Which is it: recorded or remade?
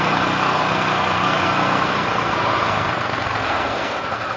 remade